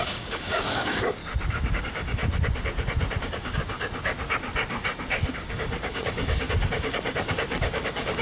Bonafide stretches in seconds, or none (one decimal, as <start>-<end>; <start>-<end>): 1.2-1.8; 2.2-3.2; 3.6-5.3

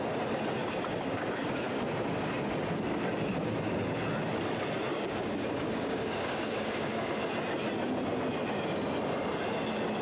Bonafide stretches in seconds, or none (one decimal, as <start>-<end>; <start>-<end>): 0.0-0.6; 1.7-4.9; 7.1-10.0